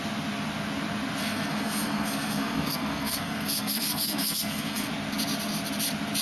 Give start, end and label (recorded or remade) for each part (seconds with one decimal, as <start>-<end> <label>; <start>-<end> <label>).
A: 0.0-1.2 recorded; 1.2-4.9 remade; 4.9-6.2 recorded